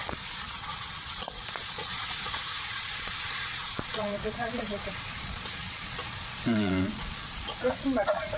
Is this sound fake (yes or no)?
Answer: yes